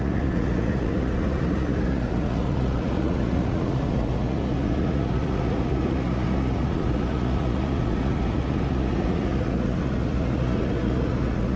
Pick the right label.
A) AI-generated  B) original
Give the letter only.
A